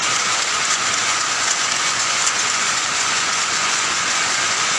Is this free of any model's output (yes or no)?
no